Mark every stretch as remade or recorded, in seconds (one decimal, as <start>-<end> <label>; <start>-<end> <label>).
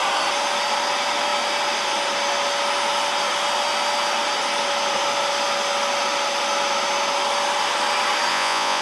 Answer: 0.0-8.3 recorded; 8.3-8.8 remade